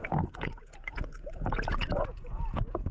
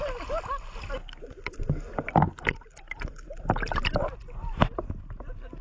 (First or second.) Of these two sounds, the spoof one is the first